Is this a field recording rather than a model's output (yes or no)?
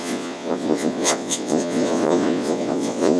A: no